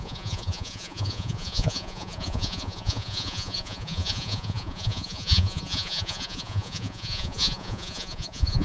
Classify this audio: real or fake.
fake